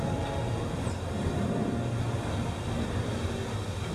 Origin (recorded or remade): recorded